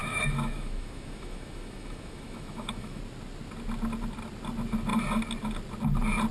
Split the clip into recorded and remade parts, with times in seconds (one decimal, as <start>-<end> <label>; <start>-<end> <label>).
0.0-3.0 remade; 3.0-6.3 recorded